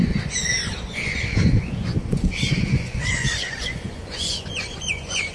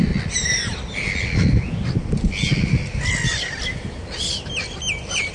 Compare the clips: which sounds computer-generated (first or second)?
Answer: first